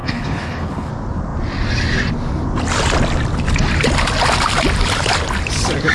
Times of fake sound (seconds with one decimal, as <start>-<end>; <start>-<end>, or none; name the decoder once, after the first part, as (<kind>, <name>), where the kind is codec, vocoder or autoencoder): 0.0-0.9 (codec, HILCodec)

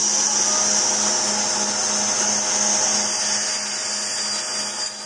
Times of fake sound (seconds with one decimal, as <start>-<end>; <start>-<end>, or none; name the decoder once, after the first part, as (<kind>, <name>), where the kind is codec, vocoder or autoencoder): none